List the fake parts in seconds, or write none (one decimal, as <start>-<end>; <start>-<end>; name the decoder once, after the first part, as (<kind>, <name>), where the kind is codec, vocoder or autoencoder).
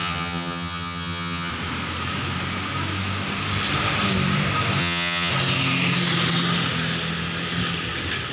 0.0-1.5 (vocoder, HiFi-GAN); 4.8-5.3